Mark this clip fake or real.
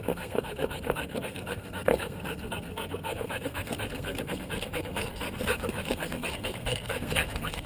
fake